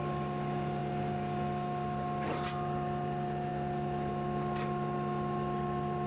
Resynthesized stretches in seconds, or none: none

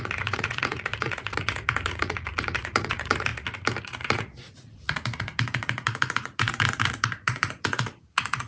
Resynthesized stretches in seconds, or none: 0.0-3.3 (vocoder, Vocos); 3.8-8.5